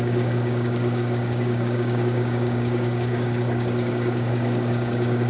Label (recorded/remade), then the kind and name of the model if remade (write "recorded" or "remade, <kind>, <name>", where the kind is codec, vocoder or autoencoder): remade, codec, DAC